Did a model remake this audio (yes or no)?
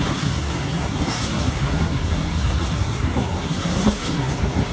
yes